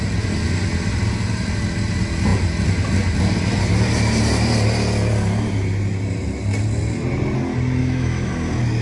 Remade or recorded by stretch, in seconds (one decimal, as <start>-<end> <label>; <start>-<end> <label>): 0.0-7.8 recorded; 7.8-8.3 remade; 8.3-8.8 recorded